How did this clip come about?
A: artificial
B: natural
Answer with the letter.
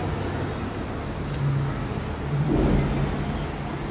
B